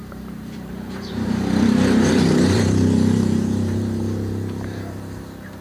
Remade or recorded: remade